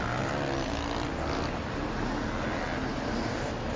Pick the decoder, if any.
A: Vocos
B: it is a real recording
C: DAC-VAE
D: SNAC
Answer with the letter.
B